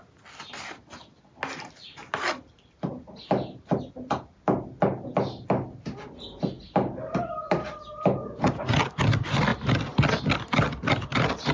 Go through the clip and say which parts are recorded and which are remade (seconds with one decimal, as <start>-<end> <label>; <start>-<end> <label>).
0.0-11.5 recorded